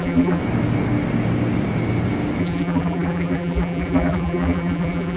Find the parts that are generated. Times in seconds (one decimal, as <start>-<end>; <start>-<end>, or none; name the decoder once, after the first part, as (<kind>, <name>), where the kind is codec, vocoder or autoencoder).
0.0-0.4 (vocoder, BigVGAN v2); 2.4-5.2